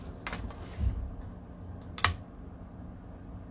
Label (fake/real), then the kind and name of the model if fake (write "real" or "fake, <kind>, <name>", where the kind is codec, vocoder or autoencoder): real